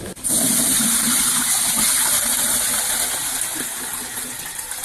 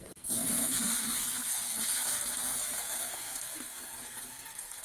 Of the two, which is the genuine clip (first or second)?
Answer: first